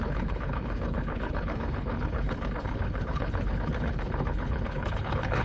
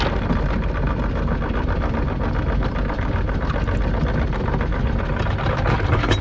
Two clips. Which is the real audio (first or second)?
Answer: second